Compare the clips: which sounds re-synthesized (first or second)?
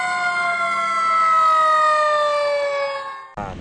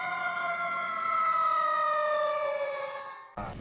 second